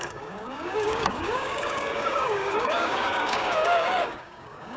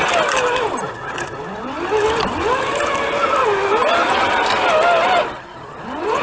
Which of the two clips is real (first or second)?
second